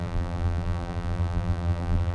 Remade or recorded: remade